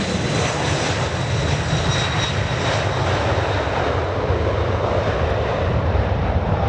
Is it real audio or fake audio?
real